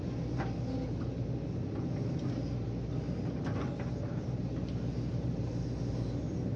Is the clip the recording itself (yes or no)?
yes